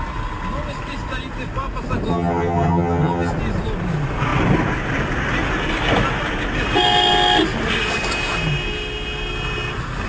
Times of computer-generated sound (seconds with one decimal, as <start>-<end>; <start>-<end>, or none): 2.1-3.3